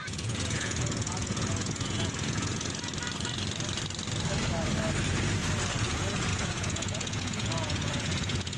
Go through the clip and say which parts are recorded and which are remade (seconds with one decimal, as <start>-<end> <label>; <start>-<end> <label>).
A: 0.0-2.9 remade; 2.9-5.8 recorded; 5.8-8.6 remade

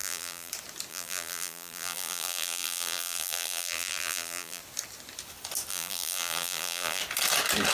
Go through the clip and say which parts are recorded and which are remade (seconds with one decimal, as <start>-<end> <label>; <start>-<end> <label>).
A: 0.0-0.5 remade; 0.5-0.9 recorded; 0.9-4.6 remade; 4.6-5.7 recorded; 5.7-7.0 remade; 7.0-7.7 recorded

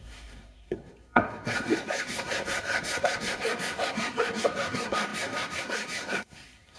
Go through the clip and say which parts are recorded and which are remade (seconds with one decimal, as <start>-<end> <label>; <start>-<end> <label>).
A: 0.0-6.8 remade

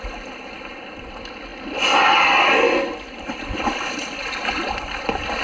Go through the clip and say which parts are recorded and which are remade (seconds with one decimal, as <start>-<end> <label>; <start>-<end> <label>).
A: 0.0-5.4 recorded

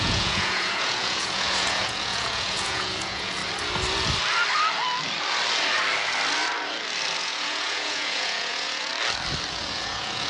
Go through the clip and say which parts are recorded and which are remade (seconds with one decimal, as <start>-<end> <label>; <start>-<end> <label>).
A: 0.0-3.4 remade; 3.4-7.2 recorded; 7.2-8.9 remade; 8.9-9.5 recorded; 9.5-10.3 remade

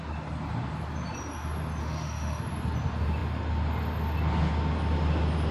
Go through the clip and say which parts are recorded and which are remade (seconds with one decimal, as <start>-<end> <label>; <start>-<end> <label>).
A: 0.0-1.8 recorded; 1.8-2.4 remade; 2.4-5.5 recorded

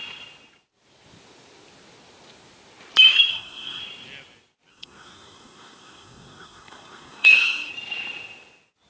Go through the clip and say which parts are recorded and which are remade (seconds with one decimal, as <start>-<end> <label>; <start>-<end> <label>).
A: 0.0-3.3 recorded; 3.3-3.8 remade; 3.8-4.7 recorded; 4.7-7.7 remade; 7.7-8.9 recorded

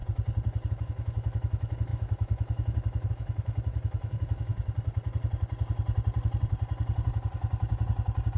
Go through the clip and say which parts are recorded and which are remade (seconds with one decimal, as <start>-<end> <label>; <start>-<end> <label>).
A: 0.0-0.7 recorded; 0.7-4.5 remade; 4.5-8.4 recorded